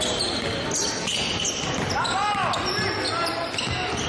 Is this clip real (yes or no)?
yes